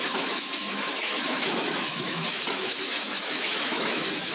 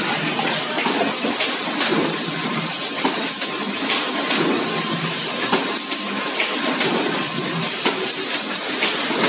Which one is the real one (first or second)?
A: second